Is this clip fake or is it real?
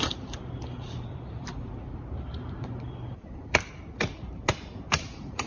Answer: fake